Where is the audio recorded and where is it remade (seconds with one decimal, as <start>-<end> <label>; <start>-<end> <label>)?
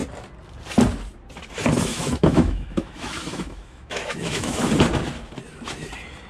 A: 0.0-1.9 recorded; 1.9-4.7 remade; 4.7-6.3 recorded